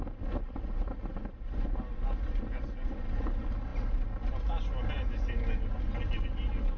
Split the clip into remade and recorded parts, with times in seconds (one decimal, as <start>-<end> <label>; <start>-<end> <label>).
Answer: 0.0-6.8 recorded